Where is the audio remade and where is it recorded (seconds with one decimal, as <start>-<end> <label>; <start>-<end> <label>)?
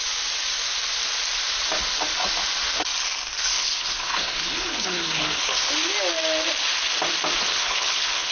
0.0-3.5 recorded; 3.5-5.7 remade; 5.7-7.4 recorded; 7.4-8.3 remade